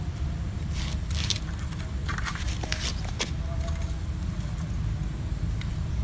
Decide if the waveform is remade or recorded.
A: recorded